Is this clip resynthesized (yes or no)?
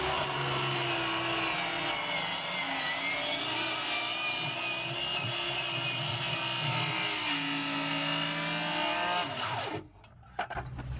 no